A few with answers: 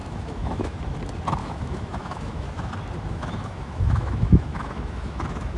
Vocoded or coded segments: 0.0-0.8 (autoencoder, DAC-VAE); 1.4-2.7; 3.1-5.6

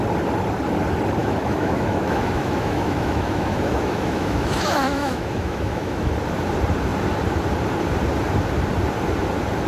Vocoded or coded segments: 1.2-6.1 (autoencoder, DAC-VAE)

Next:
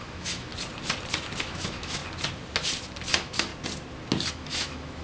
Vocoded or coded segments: 0.0-0.5 (autoencoder, DAC-VAE); 1.4-2.0; 3.1-3.5; 4.3-5.0